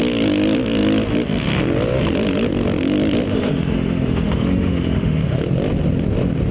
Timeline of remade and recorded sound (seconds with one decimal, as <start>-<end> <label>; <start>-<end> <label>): 0.0-3.3 recorded; 3.3-5.4 remade; 5.4-6.5 recorded